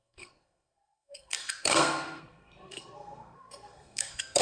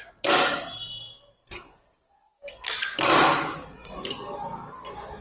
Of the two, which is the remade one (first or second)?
first